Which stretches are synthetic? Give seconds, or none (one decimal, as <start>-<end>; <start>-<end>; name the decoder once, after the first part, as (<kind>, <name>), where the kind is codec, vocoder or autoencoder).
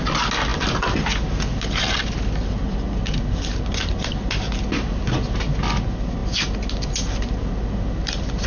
none